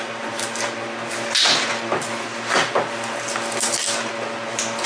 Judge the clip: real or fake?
real